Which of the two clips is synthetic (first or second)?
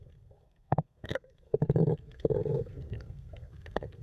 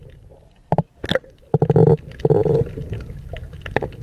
first